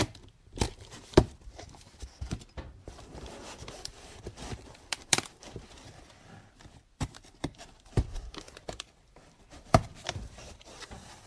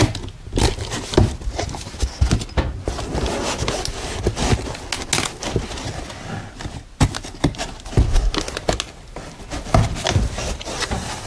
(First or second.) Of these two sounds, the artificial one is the first